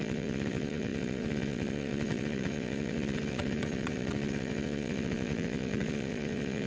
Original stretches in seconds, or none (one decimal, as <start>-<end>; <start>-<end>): none